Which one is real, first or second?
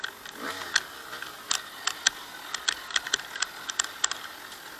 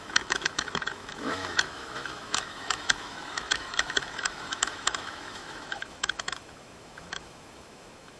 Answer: first